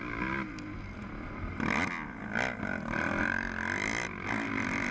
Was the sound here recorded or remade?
recorded